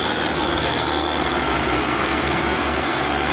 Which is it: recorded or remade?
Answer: remade